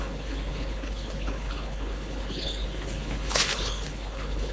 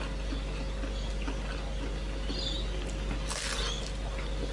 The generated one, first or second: first